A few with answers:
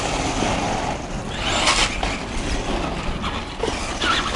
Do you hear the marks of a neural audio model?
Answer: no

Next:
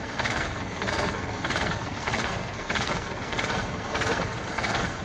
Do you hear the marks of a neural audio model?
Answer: yes